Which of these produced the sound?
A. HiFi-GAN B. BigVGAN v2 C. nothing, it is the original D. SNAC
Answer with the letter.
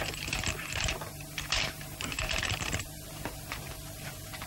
B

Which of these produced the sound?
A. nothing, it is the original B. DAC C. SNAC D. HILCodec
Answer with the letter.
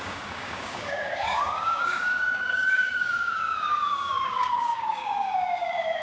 B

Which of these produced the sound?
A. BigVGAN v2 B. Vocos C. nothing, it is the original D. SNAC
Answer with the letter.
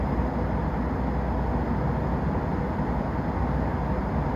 C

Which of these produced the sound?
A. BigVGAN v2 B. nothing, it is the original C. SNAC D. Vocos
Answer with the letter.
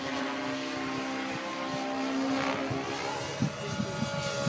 B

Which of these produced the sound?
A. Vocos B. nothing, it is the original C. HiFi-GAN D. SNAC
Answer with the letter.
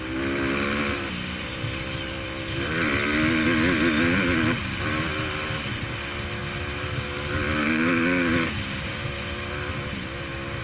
B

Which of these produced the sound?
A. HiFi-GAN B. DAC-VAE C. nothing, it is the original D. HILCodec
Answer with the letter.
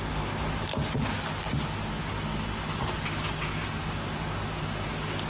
C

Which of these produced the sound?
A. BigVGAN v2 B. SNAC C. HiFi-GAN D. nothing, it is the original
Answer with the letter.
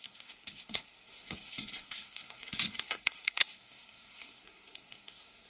B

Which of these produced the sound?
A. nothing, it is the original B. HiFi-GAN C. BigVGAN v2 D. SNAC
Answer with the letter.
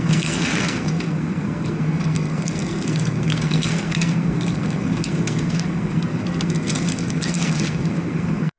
D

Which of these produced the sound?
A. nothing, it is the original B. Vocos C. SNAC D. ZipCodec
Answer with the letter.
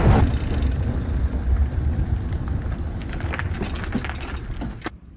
A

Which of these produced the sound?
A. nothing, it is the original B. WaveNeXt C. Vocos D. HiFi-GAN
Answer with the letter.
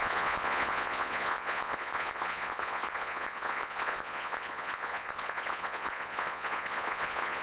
C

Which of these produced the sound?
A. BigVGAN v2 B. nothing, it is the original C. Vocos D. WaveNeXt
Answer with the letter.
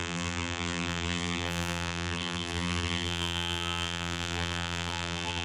A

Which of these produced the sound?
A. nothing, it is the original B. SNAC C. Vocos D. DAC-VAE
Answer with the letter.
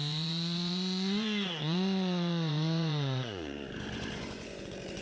C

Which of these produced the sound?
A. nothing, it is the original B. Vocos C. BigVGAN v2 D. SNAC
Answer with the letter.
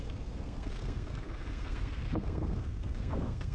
D